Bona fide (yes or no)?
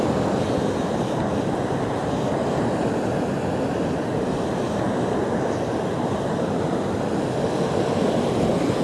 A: yes